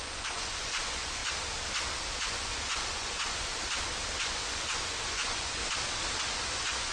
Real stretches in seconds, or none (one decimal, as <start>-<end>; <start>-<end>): 1.2-2.2; 3.5-4.2; 5.6-6.2